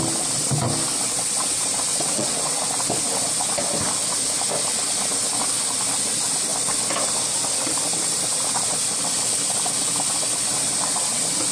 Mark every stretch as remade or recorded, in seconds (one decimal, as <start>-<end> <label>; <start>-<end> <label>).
0.0-1.9 recorded; 1.9-2.5 remade; 2.5-11.5 recorded